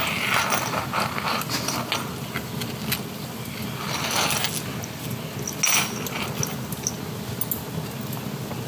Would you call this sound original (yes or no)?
yes